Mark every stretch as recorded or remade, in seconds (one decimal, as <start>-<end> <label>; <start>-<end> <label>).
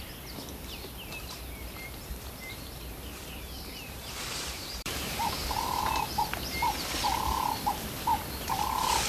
0.0-2.0 recorded; 2.0-5.8 remade; 5.8-9.1 recorded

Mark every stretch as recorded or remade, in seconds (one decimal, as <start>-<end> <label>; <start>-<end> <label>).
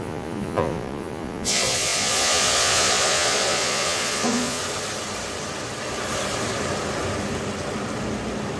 0.0-4.6 remade; 4.6-8.6 recorded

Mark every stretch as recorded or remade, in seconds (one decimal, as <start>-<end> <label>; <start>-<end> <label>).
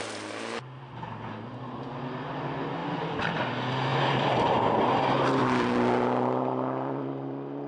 0.0-2.8 recorded; 2.8-3.3 remade; 3.3-3.9 recorded; 3.9-4.5 remade; 4.5-5.4 recorded; 5.4-7.7 remade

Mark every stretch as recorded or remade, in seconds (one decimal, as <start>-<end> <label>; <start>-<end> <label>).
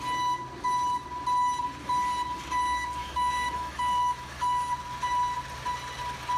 0.0-3.0 recorded; 3.0-4.7 remade; 4.7-6.4 recorded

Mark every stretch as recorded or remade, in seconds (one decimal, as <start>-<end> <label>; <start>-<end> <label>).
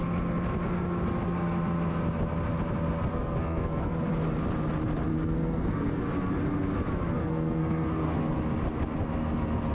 0.0-3.1 recorded; 3.1-3.9 remade; 3.9-5.1 recorded; 5.1-6.0 remade; 6.0-7.2 recorded; 7.2-8.3 remade; 8.3-9.7 recorded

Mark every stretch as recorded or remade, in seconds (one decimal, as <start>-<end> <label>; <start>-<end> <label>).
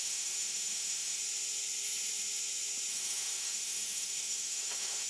0.0-1.2 remade; 1.2-2.9 recorded; 2.9-5.1 remade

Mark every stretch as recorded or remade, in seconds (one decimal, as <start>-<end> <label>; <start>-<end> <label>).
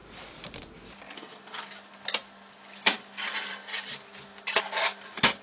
0.0-5.4 recorded